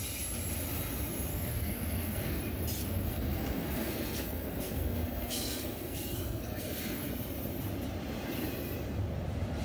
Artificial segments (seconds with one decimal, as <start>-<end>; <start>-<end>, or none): 1.3-2.4; 2.8-7.1